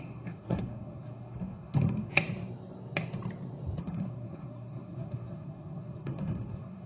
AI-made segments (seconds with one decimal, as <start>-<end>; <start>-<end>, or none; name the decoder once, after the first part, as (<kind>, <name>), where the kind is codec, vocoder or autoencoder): 0.0-2.1 (codec, SNAC); 3.8-6.9